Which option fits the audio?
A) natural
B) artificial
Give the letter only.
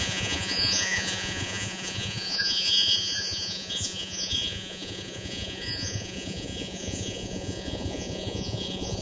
B